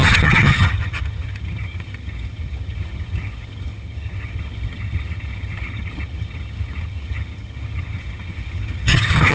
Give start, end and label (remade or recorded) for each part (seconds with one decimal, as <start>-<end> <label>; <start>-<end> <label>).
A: 0.0-9.3 remade